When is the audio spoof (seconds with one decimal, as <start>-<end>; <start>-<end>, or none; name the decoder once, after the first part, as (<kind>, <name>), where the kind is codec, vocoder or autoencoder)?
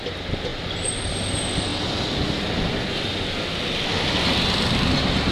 0.5-1.1 (vocoder, BigVGAN v2)